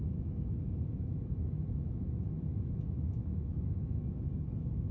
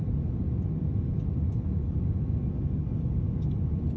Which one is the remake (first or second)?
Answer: first